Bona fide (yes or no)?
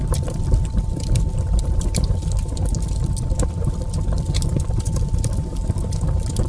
yes